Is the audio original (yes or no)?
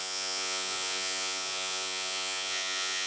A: no